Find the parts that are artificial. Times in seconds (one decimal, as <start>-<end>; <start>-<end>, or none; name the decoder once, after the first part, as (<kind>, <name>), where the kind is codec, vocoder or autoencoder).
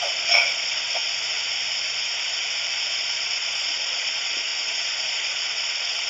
0.0-1.0 (vocoder, Vocos); 2.9-6.1